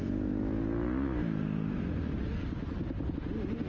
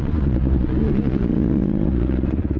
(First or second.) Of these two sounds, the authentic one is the first